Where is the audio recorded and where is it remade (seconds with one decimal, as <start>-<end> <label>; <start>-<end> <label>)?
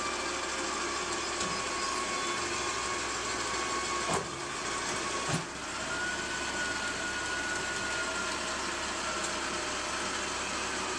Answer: 0.0-11.0 recorded